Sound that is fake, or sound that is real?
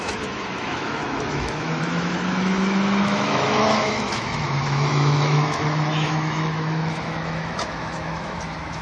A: fake